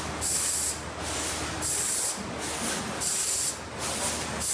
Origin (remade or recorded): recorded